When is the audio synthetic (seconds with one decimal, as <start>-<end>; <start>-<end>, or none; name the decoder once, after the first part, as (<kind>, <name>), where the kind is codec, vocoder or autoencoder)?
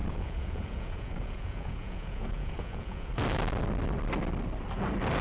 0.0-3.1 (vocoder, Vocos)